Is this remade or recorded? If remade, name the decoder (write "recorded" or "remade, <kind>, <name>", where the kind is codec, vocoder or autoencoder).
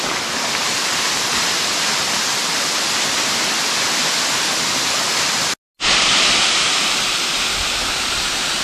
recorded